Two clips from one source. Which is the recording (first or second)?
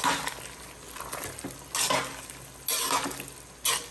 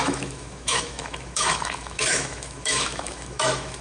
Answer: first